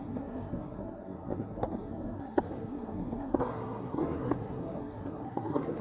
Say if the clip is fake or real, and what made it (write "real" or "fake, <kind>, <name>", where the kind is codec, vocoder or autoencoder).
fake, codec, SNAC